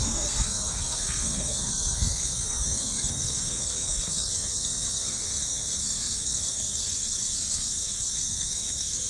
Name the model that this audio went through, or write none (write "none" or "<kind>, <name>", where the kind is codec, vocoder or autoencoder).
codec, SNAC